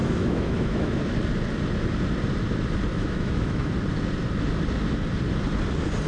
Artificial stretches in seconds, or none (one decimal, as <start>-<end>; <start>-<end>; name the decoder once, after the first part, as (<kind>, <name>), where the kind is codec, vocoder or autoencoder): 0.0-1.0 (autoencoder, DAC-VAE); 2.9-3.7